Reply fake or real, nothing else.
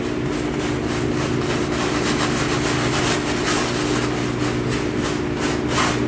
real